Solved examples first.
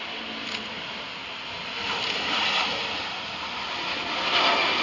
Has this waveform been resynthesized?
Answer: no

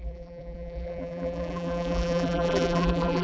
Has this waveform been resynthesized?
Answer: yes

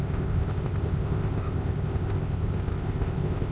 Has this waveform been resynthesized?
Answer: yes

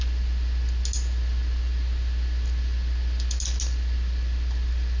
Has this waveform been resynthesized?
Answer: no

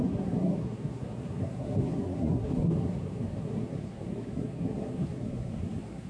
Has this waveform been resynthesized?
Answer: yes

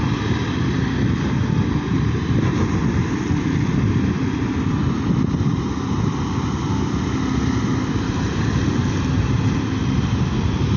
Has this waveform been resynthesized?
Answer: no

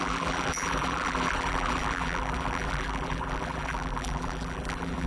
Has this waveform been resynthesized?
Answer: yes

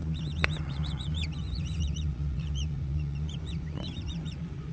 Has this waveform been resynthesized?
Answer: yes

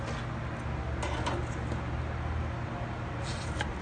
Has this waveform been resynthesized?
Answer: no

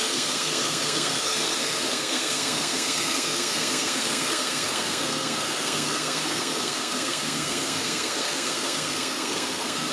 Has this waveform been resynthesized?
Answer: yes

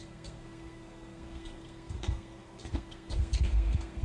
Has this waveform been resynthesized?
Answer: yes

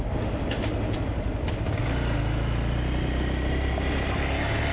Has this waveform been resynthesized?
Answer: no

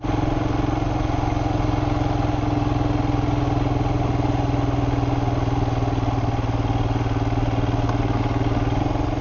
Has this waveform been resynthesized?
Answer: no